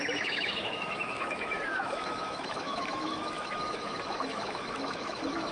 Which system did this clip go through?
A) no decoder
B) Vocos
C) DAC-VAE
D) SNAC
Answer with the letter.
C